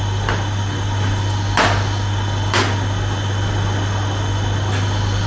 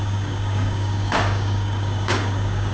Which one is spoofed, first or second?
second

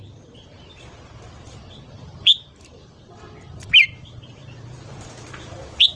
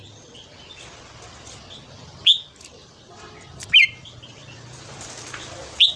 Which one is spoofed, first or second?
first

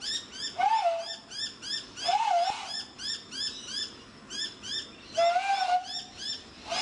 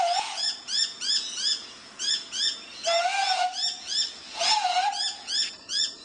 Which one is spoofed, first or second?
second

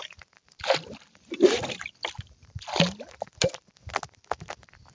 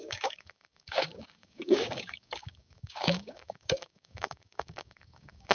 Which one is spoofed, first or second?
second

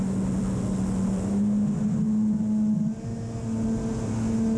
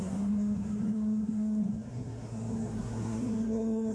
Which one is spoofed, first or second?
second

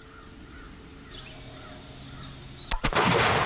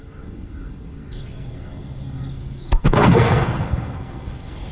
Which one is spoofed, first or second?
second